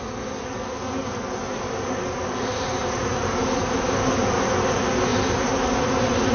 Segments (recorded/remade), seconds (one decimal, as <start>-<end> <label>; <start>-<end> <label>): 0.0-2.8 recorded; 2.8-3.6 remade; 3.6-5.1 recorded; 5.1-6.3 remade